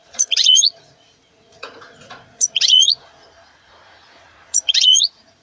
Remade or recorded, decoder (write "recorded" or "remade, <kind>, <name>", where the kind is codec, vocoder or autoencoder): remade, vocoder, Vocos